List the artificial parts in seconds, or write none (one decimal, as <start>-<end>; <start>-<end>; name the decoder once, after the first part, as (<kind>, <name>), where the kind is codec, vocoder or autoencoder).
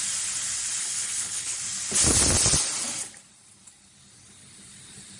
0.8-1.6 (codec, HILCodec)